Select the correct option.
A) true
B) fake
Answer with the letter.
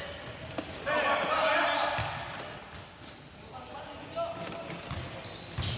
A